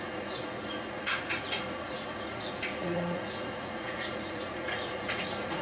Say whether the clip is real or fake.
fake